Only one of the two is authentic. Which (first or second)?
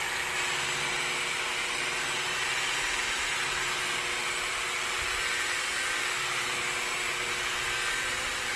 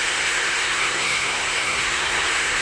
first